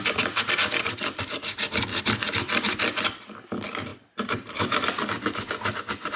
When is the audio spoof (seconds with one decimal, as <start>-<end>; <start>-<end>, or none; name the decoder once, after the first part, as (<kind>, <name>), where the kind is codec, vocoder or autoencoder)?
1.9-2.8 (vocoder, BigVGAN v2); 3.9-4.9